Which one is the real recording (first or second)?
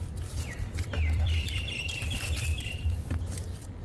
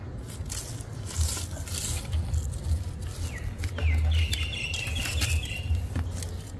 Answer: second